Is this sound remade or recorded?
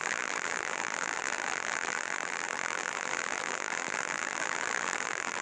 remade